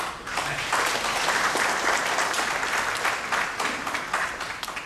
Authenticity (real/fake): real